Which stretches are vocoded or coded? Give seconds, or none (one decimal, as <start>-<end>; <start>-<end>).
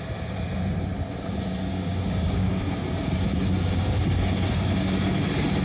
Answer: 1.7-2.5